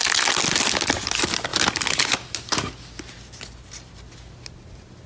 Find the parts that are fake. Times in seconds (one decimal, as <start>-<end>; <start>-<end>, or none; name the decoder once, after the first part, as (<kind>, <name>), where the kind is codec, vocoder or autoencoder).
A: none